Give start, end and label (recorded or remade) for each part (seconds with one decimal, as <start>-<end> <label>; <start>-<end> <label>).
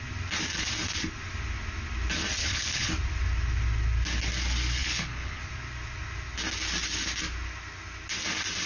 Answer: 0.0-2.4 recorded; 2.4-2.9 remade; 2.9-4.8 recorded; 4.8-5.4 remade; 5.4-8.7 recorded